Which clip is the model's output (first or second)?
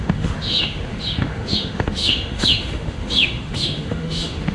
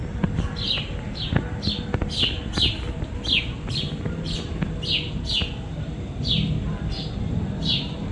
first